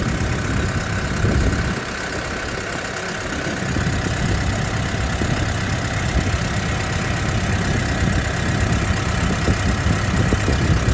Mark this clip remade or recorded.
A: recorded